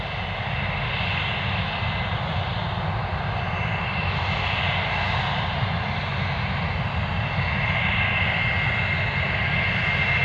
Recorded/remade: recorded